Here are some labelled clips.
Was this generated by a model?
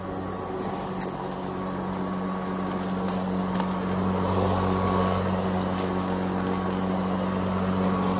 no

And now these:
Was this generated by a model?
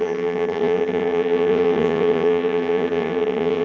yes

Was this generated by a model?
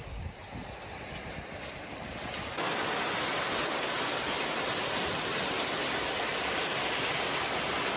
no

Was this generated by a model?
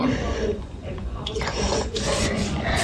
yes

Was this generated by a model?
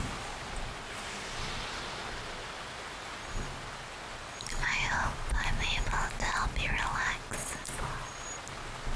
no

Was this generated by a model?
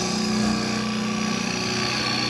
no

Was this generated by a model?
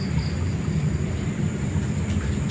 no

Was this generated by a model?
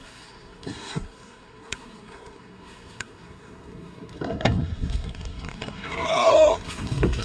yes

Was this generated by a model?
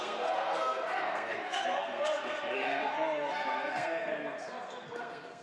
yes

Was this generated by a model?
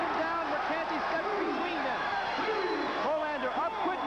no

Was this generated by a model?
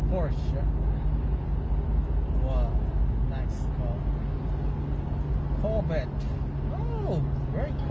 no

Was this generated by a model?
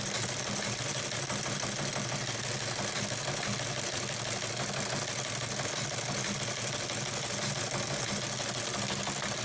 no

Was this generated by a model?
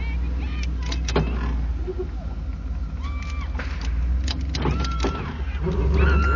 no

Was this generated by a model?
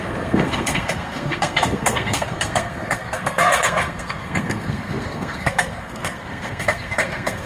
yes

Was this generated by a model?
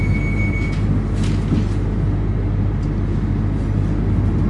no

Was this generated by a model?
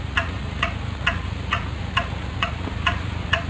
yes